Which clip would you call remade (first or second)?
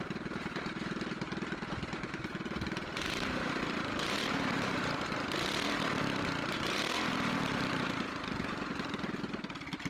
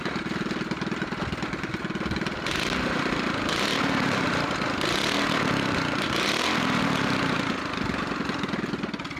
first